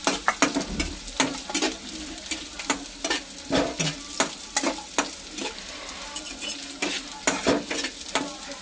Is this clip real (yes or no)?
yes